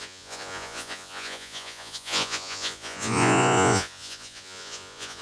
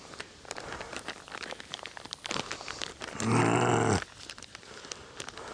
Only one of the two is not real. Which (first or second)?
first